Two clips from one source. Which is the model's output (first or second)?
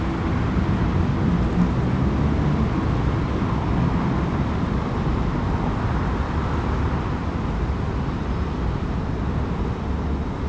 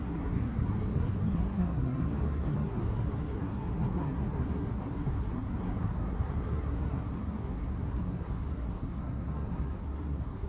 second